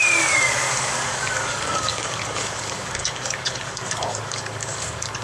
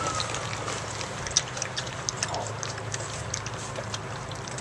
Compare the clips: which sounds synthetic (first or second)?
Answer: first